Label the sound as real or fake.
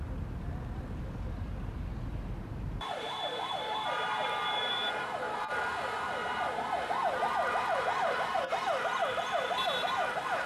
fake